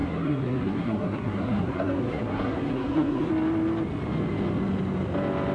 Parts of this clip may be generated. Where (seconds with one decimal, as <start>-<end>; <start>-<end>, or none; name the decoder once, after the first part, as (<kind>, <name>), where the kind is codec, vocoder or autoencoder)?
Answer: 0.0-3.3 (codec, SNAC)